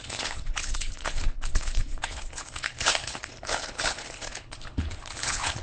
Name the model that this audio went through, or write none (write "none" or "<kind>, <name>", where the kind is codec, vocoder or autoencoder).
codec, HILCodec